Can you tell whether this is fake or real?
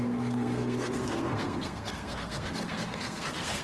fake